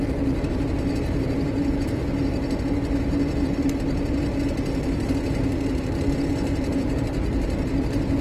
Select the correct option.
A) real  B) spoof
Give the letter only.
A